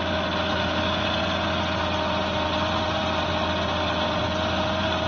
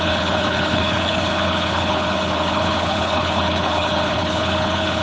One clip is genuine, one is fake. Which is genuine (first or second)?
first